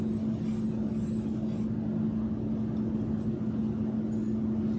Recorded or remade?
recorded